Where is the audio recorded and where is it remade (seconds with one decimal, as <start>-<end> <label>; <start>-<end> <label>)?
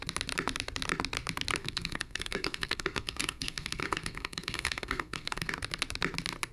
0.0-1.6 recorded; 1.6-5.5 remade; 5.5-6.5 recorded